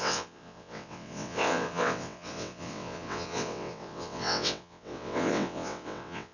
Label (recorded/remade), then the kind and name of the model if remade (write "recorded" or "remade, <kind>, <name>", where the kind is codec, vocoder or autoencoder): remade, vocoder, WaveNeXt